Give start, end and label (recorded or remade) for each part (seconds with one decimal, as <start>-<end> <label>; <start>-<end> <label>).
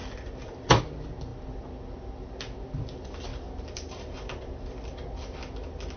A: 0.0-0.8 remade; 0.8-6.0 recorded